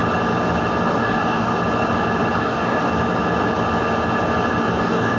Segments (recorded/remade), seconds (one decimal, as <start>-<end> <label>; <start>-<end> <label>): 0.0-0.9 recorded; 0.9-1.5 remade; 1.5-2.4 recorded; 2.4-2.9 remade; 2.9-4.7 recorded; 4.7-5.2 remade